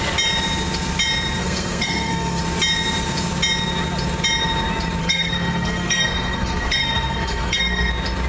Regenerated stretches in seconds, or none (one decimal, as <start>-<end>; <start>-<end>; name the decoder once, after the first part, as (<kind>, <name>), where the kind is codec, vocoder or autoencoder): 1.4-2.4 (codec, SNAC); 5.0-7.9